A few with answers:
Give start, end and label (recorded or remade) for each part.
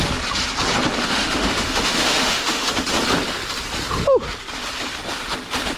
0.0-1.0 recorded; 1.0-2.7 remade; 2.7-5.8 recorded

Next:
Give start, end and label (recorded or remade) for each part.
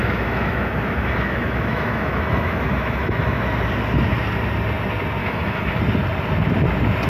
0.0-3.4 remade; 3.4-5.2 recorded; 5.2-5.8 remade; 5.8-7.1 recorded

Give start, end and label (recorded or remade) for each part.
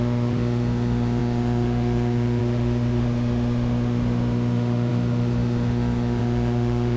0.0-7.0 remade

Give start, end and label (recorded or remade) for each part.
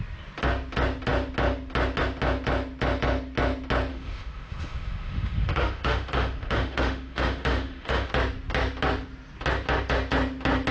0.0-3.9 recorded; 3.9-8.1 remade; 8.1-10.7 recorded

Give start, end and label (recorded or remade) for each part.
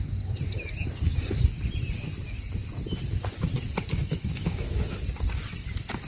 0.0-3.9 recorded; 3.9-4.8 remade; 4.8-6.1 recorded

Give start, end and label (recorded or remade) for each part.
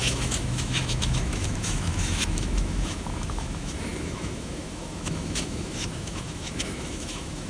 0.0-7.5 remade